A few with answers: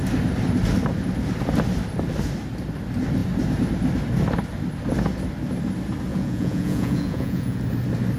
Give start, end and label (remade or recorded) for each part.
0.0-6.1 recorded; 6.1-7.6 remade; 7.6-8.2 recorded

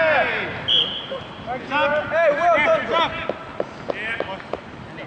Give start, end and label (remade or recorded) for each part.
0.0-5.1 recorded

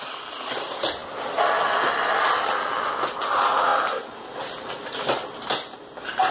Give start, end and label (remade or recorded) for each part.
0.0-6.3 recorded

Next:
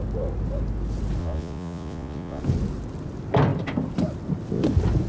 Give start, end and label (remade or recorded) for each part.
0.0-1.2 recorded; 1.2-2.4 remade; 2.4-5.1 recorded

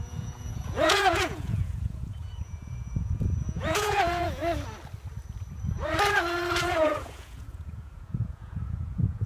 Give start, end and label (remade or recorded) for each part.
0.0-4.4 remade; 4.4-6.6 recorded; 6.6-9.3 remade

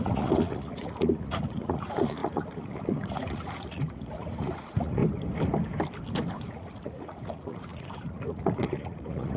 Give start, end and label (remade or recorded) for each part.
0.0-5.0 remade; 5.0-6.5 recorded; 6.5-9.4 remade